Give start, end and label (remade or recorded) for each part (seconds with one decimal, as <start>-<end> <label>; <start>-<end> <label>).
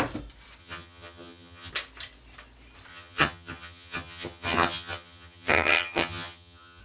0.0-0.6 recorded; 0.6-1.7 remade; 1.7-2.9 recorded; 2.9-6.8 remade